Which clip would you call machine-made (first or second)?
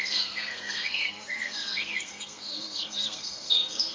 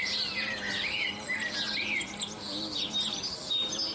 first